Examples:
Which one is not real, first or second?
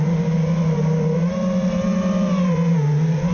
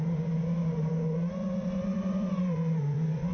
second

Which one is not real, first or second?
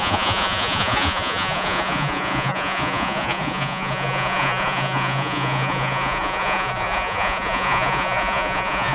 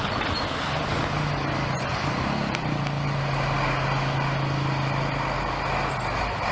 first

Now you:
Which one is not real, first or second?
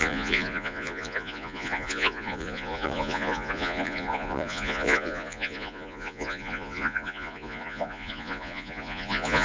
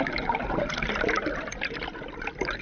first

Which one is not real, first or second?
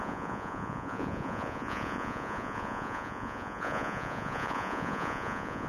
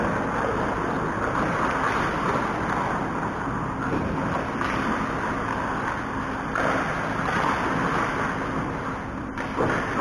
first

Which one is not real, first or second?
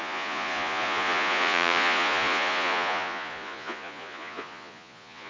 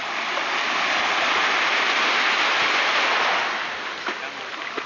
first